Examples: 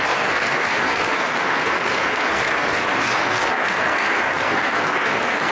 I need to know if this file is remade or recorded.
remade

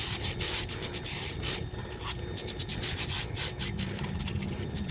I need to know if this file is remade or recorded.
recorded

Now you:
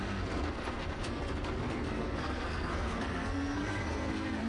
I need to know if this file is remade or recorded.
remade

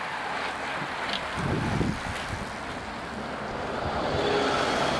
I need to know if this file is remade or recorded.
recorded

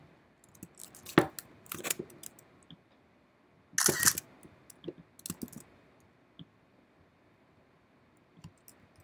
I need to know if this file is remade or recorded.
recorded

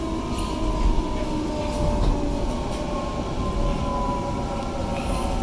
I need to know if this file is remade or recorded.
recorded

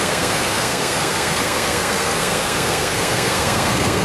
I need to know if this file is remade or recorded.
remade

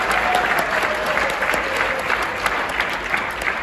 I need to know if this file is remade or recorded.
recorded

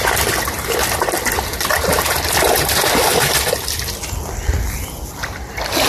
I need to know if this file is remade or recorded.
recorded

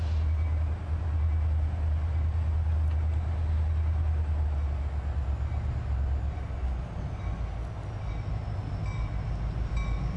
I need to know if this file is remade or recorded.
recorded